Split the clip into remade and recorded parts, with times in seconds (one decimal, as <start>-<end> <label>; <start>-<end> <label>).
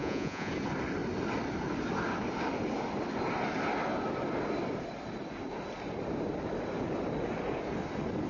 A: 0.0-0.5 remade; 0.5-8.3 recorded